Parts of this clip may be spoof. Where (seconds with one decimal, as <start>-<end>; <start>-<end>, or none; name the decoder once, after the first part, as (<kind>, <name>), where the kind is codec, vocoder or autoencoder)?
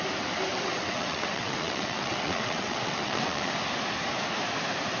0.5-3.5 (vocoder, WaveNeXt)